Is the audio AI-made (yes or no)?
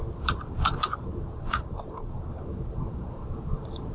yes